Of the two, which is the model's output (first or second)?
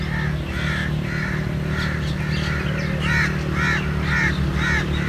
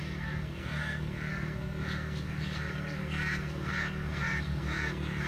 second